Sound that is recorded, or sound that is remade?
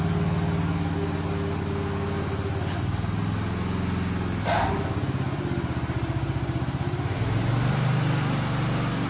recorded